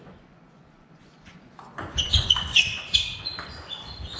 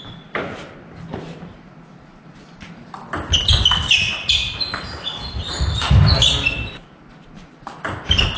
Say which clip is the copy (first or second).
first